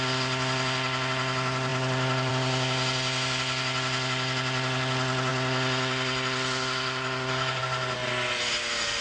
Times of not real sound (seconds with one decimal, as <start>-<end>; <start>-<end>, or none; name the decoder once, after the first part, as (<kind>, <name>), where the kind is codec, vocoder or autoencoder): none